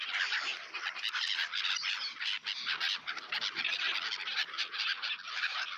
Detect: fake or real real